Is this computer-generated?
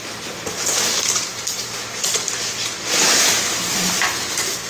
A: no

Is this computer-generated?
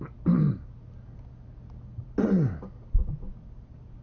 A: no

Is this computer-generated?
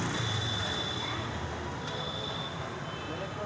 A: no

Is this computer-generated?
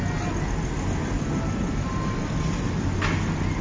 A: no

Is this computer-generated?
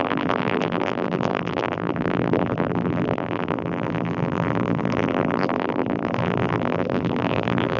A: yes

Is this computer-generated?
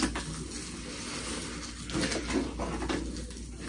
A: no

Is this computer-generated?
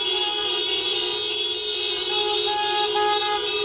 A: no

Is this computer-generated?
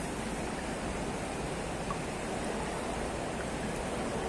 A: no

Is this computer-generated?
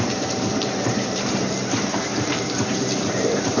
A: yes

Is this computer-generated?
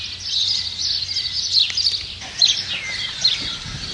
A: no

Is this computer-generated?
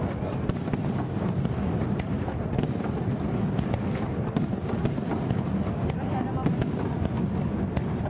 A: no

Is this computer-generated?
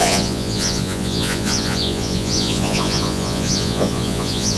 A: yes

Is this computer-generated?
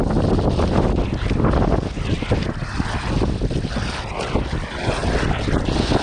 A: no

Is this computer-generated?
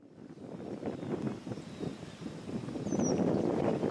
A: no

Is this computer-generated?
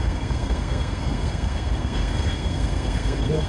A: yes